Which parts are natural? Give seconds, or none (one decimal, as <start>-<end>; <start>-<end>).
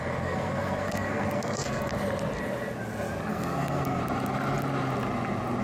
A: 1.9-3.3; 4.0-5.6